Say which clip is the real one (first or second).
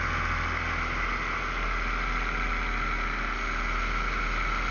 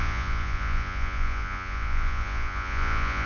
first